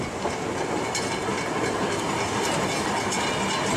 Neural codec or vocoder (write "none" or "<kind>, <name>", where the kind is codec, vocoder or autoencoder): none